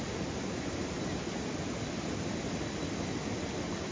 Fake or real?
real